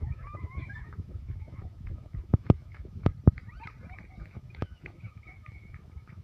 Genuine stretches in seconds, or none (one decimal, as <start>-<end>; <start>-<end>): 3.1-4.2